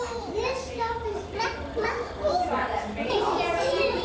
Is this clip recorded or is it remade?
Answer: remade